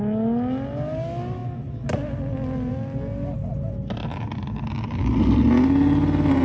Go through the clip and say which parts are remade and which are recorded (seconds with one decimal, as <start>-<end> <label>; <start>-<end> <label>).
0.0-6.4 recorded